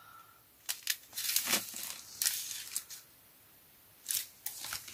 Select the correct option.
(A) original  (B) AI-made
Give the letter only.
A